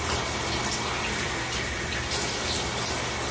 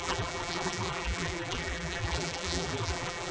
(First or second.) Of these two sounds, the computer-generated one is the second